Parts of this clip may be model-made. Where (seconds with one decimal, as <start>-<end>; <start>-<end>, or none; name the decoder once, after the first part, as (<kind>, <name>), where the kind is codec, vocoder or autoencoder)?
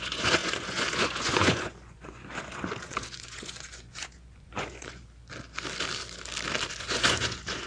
0.0-5.0 (vocoder, Vocos); 6.7-7.7